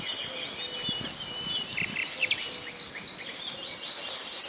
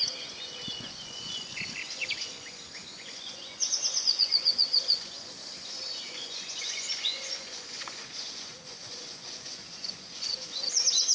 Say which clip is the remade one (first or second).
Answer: second